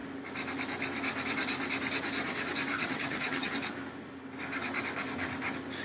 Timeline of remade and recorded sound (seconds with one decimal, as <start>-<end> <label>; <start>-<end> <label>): 0.0-2.7 recorded; 2.7-3.5 remade; 3.5-5.8 recorded